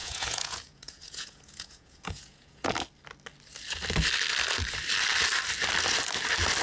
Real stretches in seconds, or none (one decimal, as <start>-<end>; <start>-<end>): 2.7-6.6